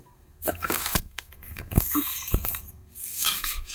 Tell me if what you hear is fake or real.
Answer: fake